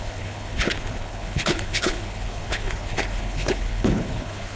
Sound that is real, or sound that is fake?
fake